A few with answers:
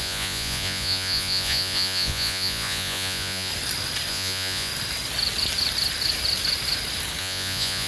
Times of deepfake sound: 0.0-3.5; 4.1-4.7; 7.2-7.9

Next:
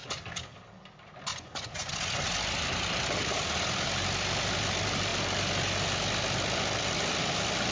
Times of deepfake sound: 1.3-1.9